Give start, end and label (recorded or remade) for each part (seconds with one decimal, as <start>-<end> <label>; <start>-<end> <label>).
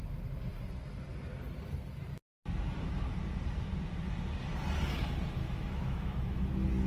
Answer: 0.0-5.4 recorded; 5.4-6.5 remade; 6.5-6.9 recorded